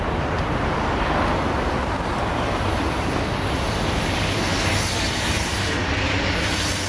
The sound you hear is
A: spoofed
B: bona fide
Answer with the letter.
B